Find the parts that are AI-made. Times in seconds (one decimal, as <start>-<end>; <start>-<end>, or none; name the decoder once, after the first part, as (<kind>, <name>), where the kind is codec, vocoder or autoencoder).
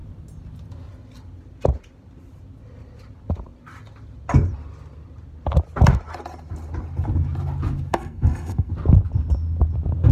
7.9-8.7 (codec, SNAC)